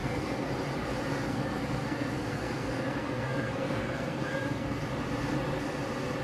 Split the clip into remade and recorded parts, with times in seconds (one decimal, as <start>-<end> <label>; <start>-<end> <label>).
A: 0.0-0.5 remade; 0.5-1.1 recorded; 1.1-4.8 remade; 4.8-6.2 recorded